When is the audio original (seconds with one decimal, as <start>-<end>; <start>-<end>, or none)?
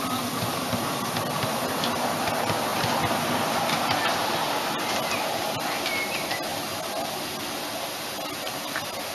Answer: 0.0-9.1